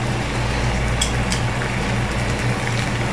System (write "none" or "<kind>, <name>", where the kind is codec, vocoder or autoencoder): none